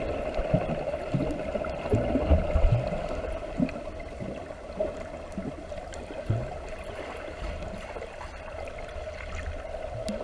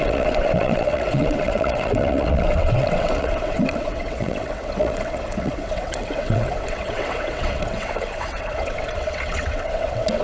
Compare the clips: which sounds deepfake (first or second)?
second